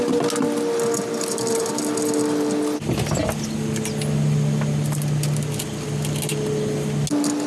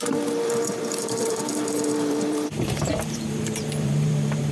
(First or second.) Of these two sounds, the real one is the first